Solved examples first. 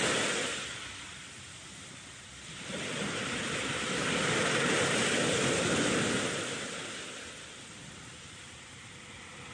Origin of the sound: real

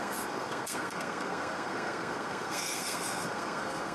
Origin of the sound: fake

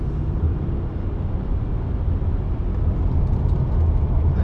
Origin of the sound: real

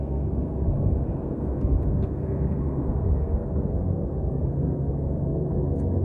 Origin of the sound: fake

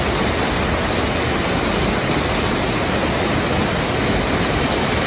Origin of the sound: real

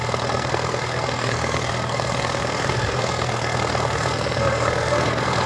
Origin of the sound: fake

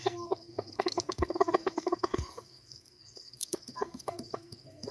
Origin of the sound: fake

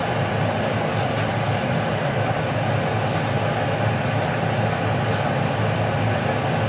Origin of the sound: real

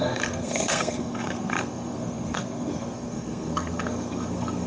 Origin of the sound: fake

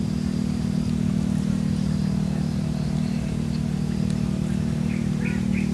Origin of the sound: real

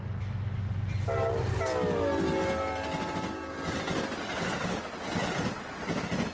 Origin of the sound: real